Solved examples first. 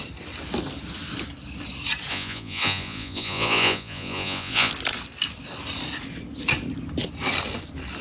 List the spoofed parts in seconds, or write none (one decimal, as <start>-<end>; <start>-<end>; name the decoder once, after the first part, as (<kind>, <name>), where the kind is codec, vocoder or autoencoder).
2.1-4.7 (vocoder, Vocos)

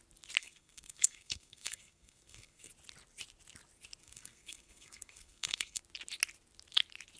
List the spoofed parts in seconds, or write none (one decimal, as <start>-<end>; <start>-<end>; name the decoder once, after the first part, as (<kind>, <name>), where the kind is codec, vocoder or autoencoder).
0.4-2.7 (codec, SNAC); 4.0-5.8

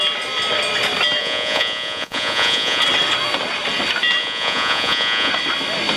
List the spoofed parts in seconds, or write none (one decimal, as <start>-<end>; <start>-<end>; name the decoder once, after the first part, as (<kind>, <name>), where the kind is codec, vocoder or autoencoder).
1.2-2.8 (vocoder, Vocos); 4.2-5.3